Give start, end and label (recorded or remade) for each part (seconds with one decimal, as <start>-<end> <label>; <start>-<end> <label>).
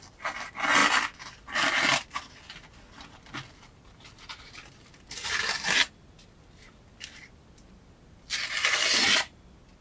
0.0-9.8 recorded